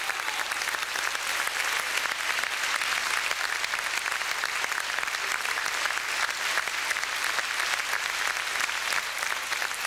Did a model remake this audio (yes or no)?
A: no